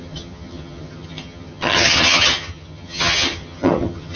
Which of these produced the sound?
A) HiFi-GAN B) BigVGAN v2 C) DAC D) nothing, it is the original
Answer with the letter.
A